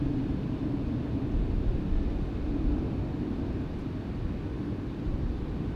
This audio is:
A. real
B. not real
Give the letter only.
A